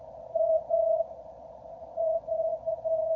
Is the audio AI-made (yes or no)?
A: yes